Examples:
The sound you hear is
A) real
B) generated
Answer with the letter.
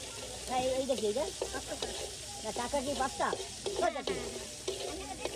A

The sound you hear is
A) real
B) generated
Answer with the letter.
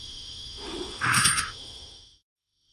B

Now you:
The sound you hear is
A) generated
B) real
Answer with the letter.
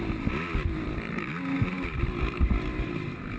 B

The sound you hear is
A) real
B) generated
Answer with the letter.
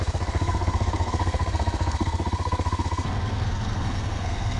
B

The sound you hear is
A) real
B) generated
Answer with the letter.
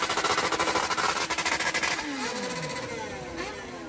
A